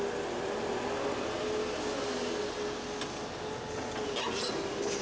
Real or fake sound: real